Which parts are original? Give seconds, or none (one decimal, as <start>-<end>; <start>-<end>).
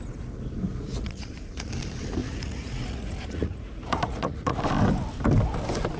0.0-0.7; 1.7-2.2; 4.6-6.0